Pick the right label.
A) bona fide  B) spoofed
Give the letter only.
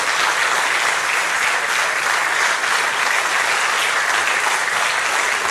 A